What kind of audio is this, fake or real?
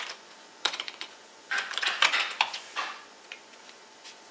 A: fake